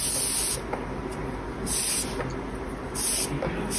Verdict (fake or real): real